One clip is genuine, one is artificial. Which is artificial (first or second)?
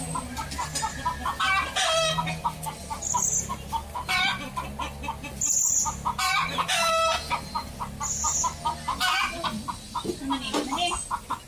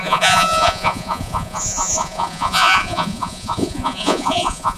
second